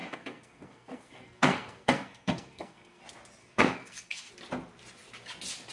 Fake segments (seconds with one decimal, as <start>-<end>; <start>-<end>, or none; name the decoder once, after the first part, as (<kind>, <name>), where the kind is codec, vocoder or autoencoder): 0.0-3.0 (codec, SNAC); 3.4-4.3